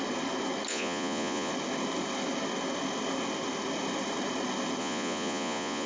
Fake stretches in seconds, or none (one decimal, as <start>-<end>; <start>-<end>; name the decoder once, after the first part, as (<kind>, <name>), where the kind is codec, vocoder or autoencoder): 0.7-1.5 (vocoder, Vocos); 4.8-5.9